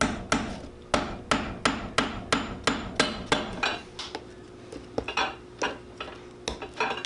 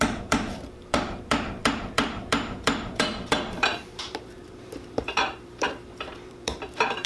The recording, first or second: first